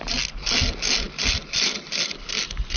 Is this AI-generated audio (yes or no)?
no